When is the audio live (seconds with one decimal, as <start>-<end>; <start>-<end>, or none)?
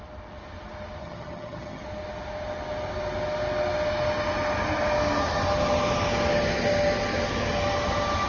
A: 0.0-1.0; 1.8-8.3